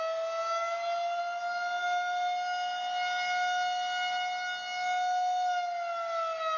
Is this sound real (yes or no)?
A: yes